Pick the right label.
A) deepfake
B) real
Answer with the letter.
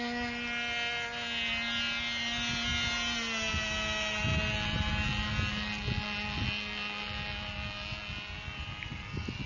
B